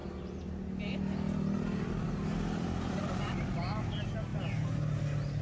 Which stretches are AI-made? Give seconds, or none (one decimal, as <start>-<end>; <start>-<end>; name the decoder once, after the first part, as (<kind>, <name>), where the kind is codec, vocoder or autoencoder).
none